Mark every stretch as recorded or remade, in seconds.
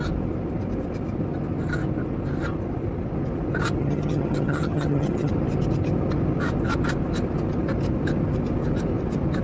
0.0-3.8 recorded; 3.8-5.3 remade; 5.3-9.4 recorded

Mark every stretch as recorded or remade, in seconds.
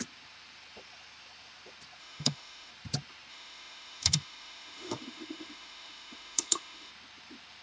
0.0-2.0 recorded; 2.0-2.7 remade; 2.7-3.3 recorded; 3.3-6.9 remade; 6.9-7.6 recorded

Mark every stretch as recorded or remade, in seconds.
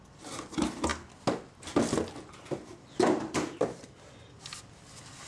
0.0-5.3 recorded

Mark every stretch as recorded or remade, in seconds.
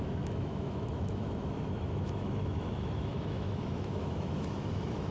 0.0-5.1 remade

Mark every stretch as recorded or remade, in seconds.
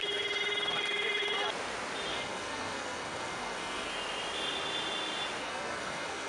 0.0-2.1 recorded; 2.1-3.9 remade; 3.9-5.4 recorded; 5.4-6.3 remade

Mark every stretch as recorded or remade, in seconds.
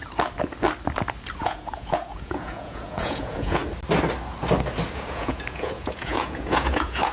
0.0-1.4 recorded; 1.4-3.6 remade; 3.6-4.9 recorded; 4.9-7.1 remade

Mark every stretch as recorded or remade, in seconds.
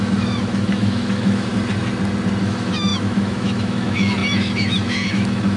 0.0-1.5 remade; 1.5-2.4 recorded; 2.4-5.6 remade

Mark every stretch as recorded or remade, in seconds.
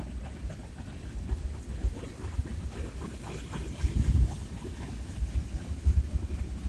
0.0-0.6 recorded; 0.6-1.2 remade; 1.2-6.7 recorded